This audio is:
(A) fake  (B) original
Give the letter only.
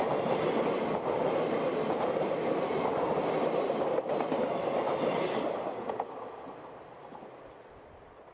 B